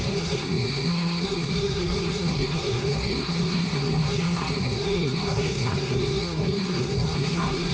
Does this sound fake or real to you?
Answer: fake